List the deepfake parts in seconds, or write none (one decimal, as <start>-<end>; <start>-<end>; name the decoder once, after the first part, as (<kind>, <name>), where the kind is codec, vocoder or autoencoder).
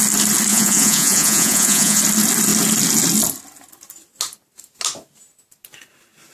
0.5-2.0 (vocoder, Vocos)